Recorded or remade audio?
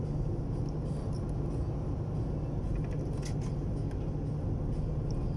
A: recorded